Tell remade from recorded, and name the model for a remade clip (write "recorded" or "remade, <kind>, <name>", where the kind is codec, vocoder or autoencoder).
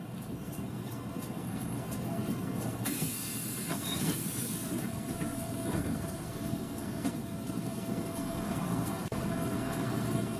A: remade, codec, SNAC